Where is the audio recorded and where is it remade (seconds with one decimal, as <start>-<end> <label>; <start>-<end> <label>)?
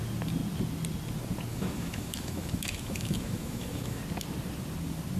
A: 0.0-1.5 recorded; 1.5-4.0 remade; 4.0-5.2 recorded